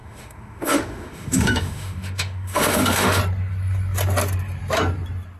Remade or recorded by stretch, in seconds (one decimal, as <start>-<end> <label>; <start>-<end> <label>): 0.0-3.2 remade; 3.2-5.4 recorded